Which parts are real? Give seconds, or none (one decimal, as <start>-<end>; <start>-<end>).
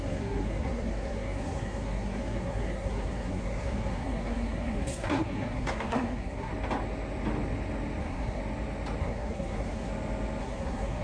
6.5-8.0; 8.4-9.0; 9.9-10.4